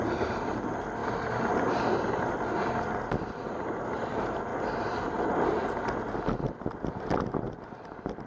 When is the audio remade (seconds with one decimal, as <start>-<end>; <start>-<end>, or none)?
4.5-5.3